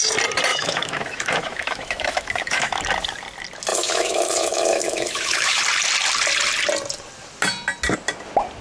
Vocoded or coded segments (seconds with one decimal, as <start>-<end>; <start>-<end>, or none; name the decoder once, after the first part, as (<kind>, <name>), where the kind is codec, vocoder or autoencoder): 0.5-2.8 (autoencoder, DAC-VAE); 3.7-5.6

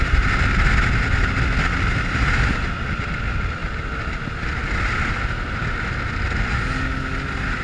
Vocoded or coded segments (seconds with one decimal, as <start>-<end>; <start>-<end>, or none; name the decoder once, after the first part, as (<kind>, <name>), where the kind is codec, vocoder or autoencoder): none

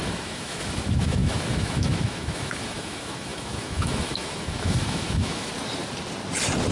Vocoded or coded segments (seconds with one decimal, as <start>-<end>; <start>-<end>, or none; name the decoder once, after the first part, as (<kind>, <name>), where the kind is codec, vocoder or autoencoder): 0.0-5.5 (autoencoder, DAC-VAE)

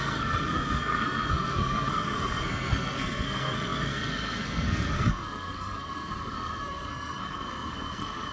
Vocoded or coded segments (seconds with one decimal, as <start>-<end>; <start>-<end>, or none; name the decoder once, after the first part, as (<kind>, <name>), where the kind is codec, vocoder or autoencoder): 0.0-8.3 (codec, SNAC)

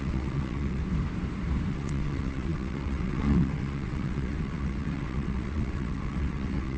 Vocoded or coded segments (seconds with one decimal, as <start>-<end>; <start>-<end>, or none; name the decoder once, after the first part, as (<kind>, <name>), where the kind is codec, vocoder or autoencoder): 0.0-0.8 (vocoder, WaveNeXt); 1.7-6.8

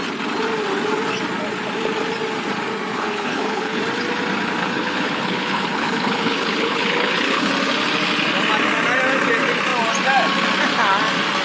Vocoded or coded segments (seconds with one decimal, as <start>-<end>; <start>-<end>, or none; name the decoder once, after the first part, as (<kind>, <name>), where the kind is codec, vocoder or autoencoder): 2.9-3.8 (codec, HILCodec); 4.6-7.5

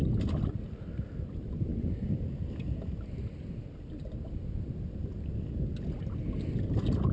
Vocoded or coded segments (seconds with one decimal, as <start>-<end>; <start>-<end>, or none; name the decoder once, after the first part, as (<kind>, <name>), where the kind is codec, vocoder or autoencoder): none